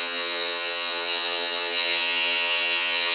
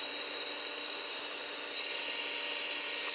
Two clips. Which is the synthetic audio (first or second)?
first